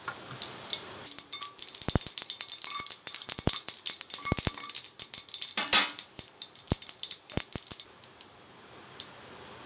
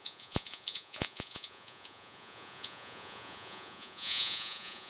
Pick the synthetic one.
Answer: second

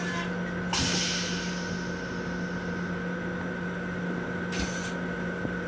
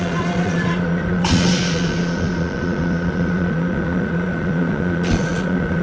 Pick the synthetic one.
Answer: second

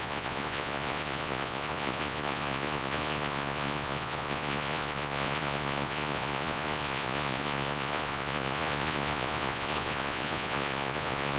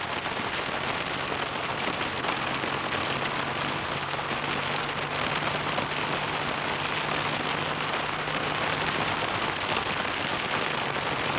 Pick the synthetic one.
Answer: first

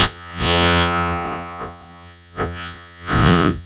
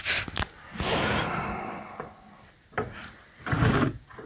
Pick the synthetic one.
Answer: first